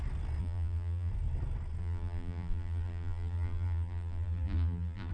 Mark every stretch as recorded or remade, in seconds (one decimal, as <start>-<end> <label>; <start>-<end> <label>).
0.0-0.4 recorded; 0.4-1.1 remade; 1.1-1.8 recorded; 1.8-5.1 remade